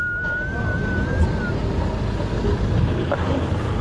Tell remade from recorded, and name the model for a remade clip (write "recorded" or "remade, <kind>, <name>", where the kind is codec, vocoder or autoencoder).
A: recorded